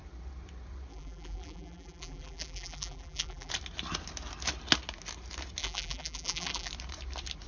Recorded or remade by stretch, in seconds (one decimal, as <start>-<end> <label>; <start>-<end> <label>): 0.0-0.9 recorded; 0.9-3.5 remade; 3.5-5.6 recorded; 5.6-6.7 remade; 6.7-7.5 recorded